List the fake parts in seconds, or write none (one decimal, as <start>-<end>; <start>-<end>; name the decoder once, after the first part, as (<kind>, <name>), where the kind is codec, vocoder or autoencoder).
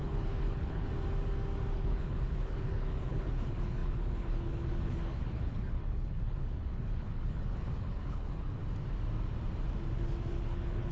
0.0-0.9 (codec, HILCodec); 1.7-8.6; 10.3-10.9